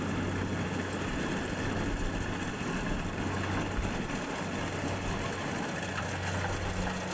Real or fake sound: real